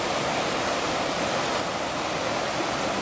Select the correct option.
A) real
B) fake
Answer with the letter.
A